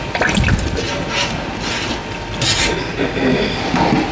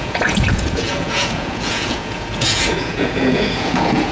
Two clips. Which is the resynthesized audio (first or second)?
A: second